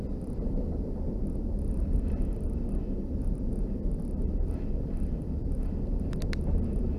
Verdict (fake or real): real